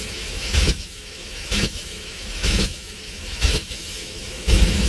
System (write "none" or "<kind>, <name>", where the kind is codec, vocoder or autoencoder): autoencoder, DAC-VAE